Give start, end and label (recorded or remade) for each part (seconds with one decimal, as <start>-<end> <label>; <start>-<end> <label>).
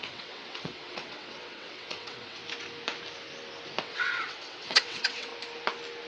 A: 0.0-2.4 remade; 2.4-3.8 recorded; 3.8-5.3 remade; 5.3-6.1 recorded